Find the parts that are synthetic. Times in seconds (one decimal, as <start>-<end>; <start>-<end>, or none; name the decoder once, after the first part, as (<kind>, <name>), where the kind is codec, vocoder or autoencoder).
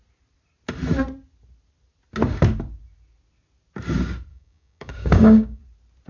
4.3-5.6 (codec, DAC)